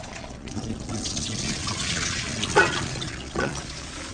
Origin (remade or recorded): remade